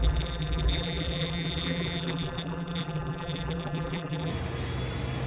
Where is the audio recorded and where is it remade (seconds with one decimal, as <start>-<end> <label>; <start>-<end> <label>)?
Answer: 0.0-4.3 remade; 4.3-5.3 recorded